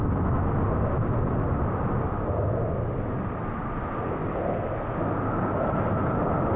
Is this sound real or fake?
real